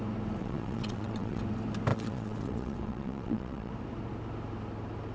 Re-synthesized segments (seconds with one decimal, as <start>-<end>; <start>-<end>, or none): 0.4-1.4; 1.9-3.7